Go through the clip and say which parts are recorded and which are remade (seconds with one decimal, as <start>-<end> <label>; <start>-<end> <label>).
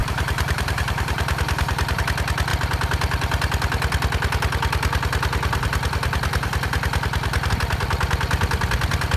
0.0-2.0 remade; 2.0-9.2 recorded